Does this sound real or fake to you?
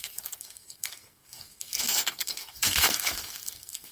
fake